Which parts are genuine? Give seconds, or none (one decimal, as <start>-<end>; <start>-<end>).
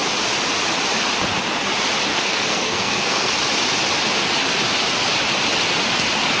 0.0-2.1; 3.3-6.4